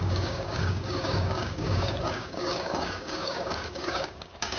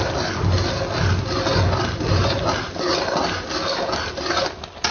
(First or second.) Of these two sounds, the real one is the second